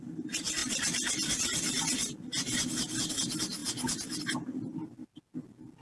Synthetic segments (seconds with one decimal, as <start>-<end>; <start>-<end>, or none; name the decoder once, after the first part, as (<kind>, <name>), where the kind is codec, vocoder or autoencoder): none